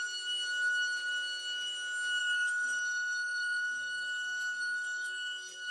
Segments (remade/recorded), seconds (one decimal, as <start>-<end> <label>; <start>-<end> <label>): 0.0-2.2 recorded; 2.2-5.7 remade